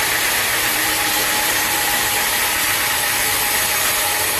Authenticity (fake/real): real